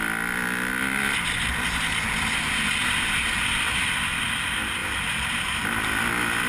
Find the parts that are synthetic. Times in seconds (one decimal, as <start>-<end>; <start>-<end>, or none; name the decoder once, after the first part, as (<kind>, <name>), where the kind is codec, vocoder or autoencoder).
none